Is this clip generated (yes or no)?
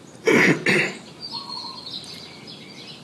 no